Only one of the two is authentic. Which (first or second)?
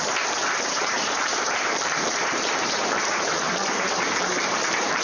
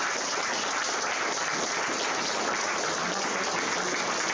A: second